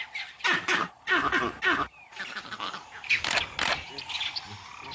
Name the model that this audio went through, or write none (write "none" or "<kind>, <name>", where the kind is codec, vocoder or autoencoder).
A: none